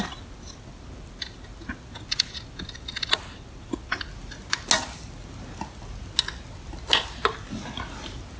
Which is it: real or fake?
real